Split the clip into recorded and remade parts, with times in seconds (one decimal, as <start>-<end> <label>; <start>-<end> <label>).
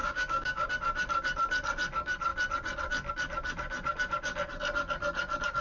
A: 0.0-0.7 remade; 0.7-5.6 recorded